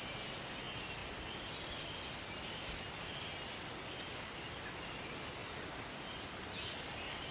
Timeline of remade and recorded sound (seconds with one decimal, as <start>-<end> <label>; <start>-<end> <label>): 0.0-7.3 recorded